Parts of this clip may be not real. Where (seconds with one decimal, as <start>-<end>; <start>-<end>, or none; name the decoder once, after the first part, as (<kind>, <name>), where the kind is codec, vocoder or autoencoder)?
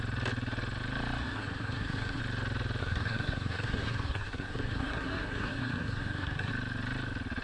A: 1.2-2.2 (codec, SNAC); 2.8-6.5